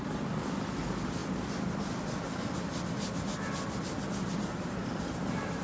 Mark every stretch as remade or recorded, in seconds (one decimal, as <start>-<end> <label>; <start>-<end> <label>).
0.0-1.2 remade; 1.2-4.6 recorded; 4.6-5.6 remade